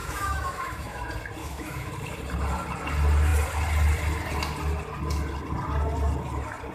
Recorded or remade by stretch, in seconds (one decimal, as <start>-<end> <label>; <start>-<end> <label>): 0.0-1.0 remade; 1.0-1.4 recorded; 1.4-1.9 remade; 1.9-6.7 recorded